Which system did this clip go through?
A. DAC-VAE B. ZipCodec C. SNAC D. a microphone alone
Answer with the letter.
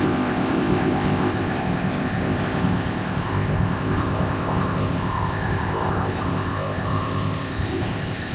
B